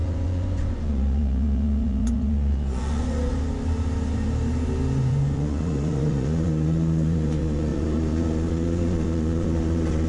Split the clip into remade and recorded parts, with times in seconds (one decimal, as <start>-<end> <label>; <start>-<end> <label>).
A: 0.0-3.3 remade; 3.3-5.0 recorded; 5.0-10.1 remade